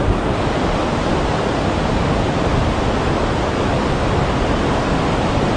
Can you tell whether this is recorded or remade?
recorded